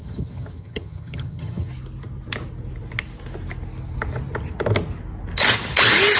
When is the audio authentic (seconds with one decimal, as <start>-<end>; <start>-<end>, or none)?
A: 1.7-6.2